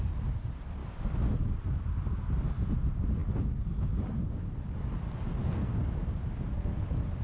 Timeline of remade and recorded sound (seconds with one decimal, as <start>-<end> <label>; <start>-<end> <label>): 0.0-5.4 recorded; 5.4-5.9 remade; 5.9-7.2 recorded